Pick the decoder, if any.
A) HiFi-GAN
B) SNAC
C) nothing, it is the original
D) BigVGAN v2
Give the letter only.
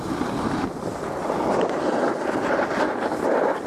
C